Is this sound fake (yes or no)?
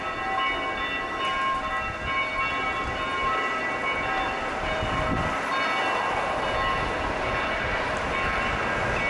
no